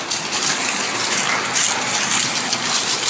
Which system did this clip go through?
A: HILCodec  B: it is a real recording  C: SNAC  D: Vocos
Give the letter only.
B